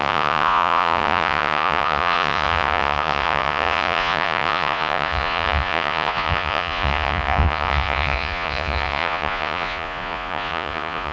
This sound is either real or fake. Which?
fake